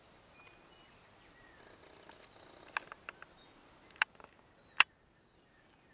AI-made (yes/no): no